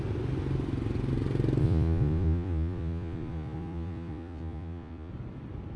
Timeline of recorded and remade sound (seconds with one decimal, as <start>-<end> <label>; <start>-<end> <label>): 0.0-1.6 recorded; 1.6-5.1 remade; 5.1-5.8 recorded